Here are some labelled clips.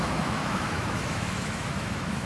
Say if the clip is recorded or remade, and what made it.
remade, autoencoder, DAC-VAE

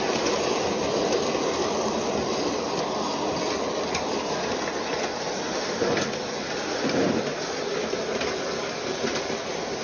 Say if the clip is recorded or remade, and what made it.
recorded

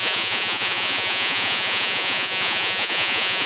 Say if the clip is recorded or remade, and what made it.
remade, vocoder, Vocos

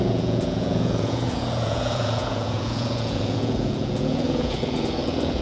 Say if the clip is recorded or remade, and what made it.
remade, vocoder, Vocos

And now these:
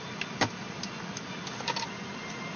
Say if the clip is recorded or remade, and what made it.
recorded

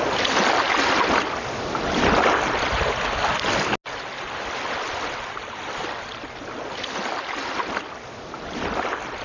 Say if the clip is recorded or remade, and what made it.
recorded